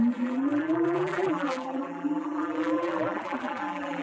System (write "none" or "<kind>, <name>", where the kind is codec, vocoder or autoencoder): vocoder, BigVGAN v2